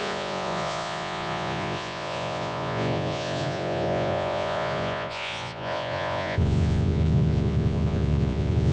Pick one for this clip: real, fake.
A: fake